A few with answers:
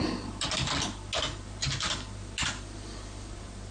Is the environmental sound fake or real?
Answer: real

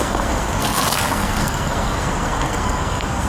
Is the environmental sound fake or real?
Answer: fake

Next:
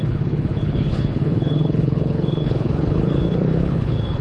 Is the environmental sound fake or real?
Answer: fake